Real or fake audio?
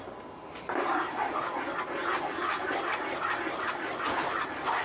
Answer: real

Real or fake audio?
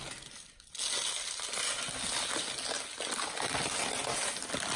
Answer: real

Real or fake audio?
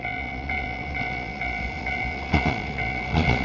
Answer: fake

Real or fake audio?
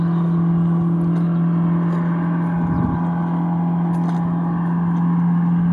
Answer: real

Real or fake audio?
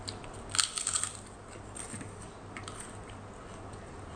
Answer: real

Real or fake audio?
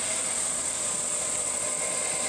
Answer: fake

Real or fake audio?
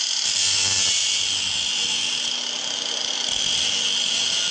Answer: real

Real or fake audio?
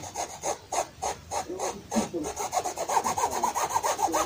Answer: real